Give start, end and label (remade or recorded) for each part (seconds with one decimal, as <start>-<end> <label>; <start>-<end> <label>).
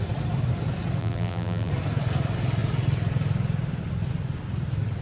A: 0.0-1.0 recorded; 1.0-1.7 remade; 1.7-5.0 recorded